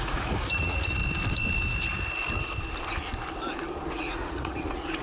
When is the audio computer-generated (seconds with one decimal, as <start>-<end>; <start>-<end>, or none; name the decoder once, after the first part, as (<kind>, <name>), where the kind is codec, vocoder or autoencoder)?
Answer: 0.0-1.0 (vocoder, Vocos); 3.9-5.0